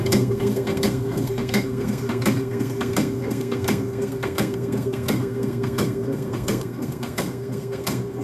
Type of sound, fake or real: fake